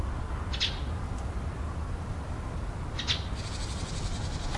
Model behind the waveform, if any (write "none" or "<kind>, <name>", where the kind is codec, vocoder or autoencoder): none